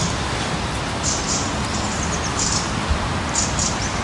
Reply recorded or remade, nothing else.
recorded